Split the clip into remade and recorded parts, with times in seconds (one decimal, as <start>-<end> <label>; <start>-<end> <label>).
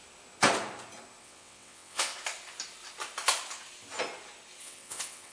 0.0-1.2 recorded; 1.2-2.1 remade; 2.1-4.6 recorded; 4.6-5.3 remade